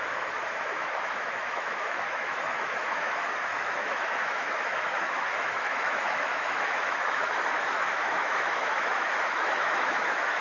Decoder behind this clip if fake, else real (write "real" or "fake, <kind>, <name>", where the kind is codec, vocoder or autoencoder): fake, autoencoder, DAC-VAE